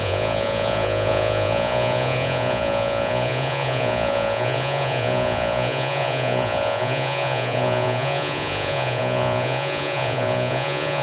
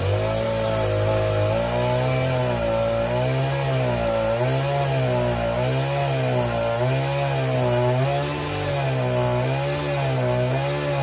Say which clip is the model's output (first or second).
first